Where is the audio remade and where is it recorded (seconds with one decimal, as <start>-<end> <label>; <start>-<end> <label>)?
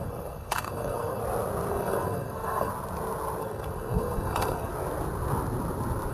0.0-1.2 remade; 1.2-1.7 recorded; 1.7-2.7 remade; 2.7-3.4 recorded; 3.4-4.7 remade; 4.7-6.1 recorded